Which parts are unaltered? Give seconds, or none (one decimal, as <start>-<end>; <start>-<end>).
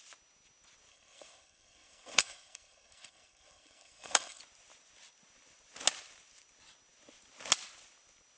0.0-0.9; 4.4-8.4